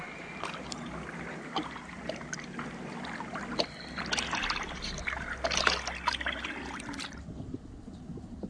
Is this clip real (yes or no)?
yes